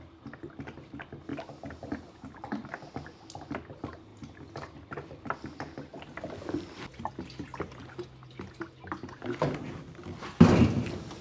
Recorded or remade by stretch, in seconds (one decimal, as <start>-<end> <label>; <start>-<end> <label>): 0.0-11.2 recorded

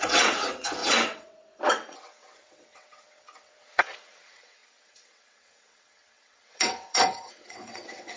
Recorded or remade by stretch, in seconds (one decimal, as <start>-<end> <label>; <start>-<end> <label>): 0.0-8.2 remade

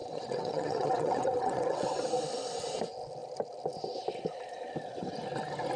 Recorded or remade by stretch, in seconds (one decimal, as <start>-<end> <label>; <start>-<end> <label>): 0.0-1.9 remade; 1.9-5.8 recorded

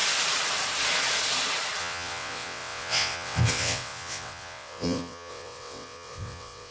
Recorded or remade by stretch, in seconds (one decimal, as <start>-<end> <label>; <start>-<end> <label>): 0.0-1.8 recorded; 1.8-6.7 remade